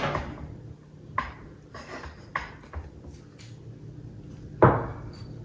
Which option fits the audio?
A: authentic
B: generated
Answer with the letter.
A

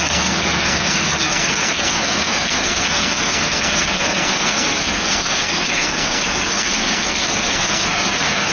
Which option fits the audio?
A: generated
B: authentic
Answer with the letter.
A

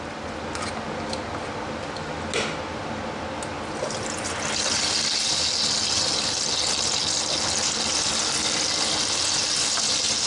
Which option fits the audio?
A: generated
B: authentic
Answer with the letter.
B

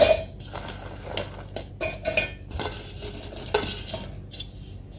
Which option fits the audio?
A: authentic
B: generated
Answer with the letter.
A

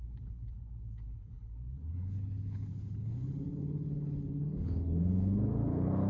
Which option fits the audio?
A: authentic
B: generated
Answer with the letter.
B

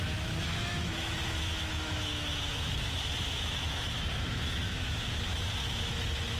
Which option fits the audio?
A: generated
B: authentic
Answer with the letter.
A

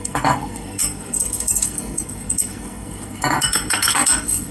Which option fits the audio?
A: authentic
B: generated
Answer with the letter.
B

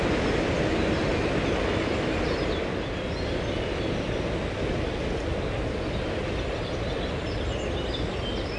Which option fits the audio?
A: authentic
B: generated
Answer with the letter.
A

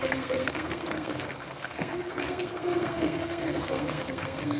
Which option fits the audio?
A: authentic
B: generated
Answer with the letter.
B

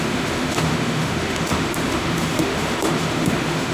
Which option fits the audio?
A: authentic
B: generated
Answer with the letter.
B